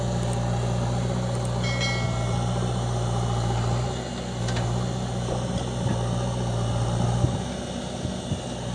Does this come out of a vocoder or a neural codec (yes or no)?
no